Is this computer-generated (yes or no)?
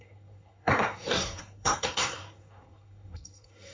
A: yes